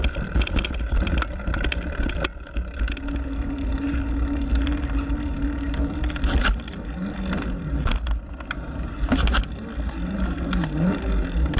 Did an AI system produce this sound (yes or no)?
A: no